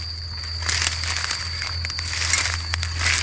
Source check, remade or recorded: recorded